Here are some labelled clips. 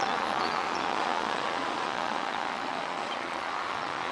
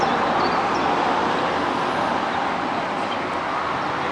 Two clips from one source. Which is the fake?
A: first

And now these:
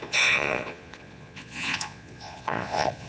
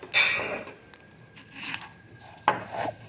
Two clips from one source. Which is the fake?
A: first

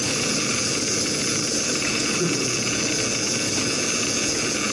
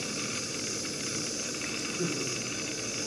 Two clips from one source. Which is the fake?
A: first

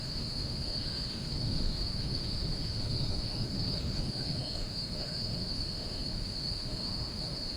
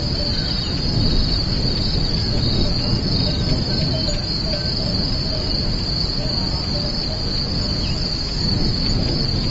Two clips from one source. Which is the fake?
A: first